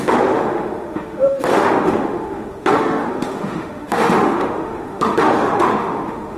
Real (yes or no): no